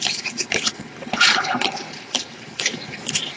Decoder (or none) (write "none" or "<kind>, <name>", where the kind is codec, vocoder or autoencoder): none